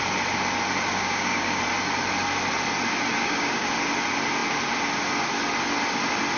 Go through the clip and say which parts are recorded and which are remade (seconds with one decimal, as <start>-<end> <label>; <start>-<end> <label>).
0.0-1.0 recorded; 1.0-1.6 remade; 1.6-3.2 recorded; 3.2-3.7 remade; 3.7-6.4 recorded